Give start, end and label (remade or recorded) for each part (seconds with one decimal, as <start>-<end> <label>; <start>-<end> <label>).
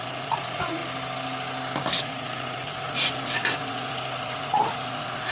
0.0-0.8 remade; 0.8-2.0 recorded; 2.0-5.3 remade